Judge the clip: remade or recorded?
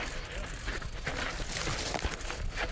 recorded